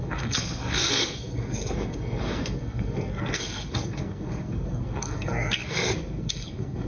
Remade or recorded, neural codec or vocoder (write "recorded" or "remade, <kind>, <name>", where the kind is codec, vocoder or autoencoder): remade, codec, SNAC